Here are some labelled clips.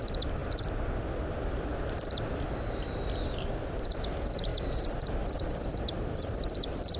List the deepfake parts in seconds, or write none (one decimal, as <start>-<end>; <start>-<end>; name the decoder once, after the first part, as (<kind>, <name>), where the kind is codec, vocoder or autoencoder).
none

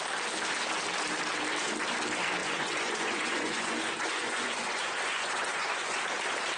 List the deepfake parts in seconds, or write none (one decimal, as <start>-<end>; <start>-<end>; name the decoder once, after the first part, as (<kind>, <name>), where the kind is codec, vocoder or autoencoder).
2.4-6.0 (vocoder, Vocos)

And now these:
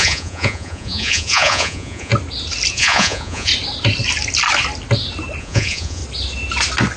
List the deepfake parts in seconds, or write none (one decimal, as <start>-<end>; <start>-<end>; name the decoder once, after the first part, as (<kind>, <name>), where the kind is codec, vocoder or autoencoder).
0.0-2.1 (vocoder, Vocos); 2.7-3.5; 5.4-6.0

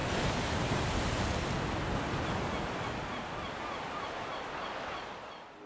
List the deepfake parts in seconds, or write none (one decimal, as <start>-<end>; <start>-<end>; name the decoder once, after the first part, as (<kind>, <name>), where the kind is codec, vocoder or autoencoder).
none

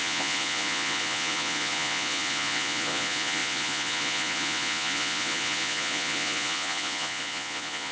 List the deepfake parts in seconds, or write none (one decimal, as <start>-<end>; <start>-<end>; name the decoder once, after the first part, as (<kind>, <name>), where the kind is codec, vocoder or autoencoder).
0.0-7.9 (vocoder, Vocos)

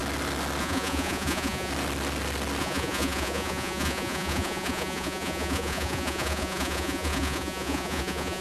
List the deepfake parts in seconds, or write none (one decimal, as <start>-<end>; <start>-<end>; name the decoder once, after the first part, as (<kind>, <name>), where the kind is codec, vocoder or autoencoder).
0.6-1.7 (vocoder, Vocos); 2.6-8.4

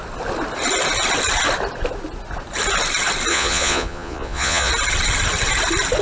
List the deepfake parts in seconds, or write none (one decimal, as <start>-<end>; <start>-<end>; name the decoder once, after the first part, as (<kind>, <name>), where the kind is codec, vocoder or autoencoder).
3.3-4.7 (vocoder, Vocos)